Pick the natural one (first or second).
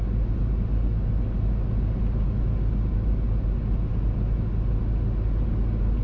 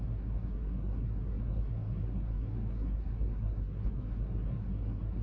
first